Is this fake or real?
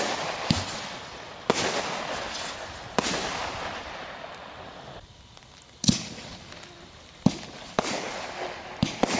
real